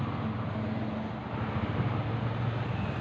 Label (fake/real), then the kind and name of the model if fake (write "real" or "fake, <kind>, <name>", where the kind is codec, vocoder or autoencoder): real